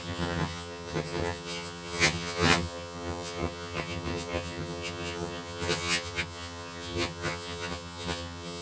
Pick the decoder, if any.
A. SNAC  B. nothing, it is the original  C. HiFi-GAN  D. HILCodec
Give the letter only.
C